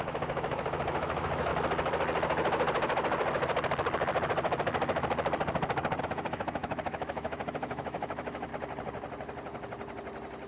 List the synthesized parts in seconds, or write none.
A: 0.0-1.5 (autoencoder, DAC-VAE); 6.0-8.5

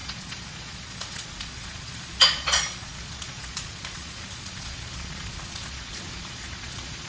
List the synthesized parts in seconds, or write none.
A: 0.0-7.1 (vocoder, Vocos)

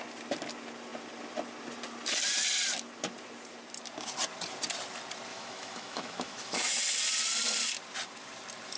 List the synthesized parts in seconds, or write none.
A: 5.3-6.8 (autoencoder, DAC-VAE)

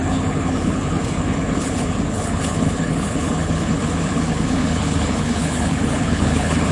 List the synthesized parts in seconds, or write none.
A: 0.0-6.7 (codec, HILCodec)